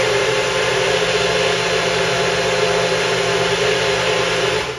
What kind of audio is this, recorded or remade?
recorded